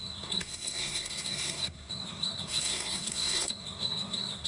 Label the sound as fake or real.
fake